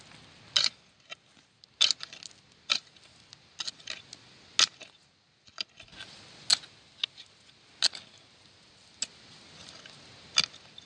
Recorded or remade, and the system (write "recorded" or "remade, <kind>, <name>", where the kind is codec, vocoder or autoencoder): recorded